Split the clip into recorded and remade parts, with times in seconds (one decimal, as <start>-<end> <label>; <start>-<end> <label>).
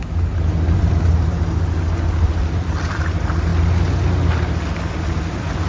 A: 0.0-0.7 recorded; 0.7-1.1 remade; 1.1-2.4 recorded; 2.4-3.5 remade; 3.5-5.0 recorded; 5.0-5.7 remade